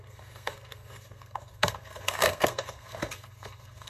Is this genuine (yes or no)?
no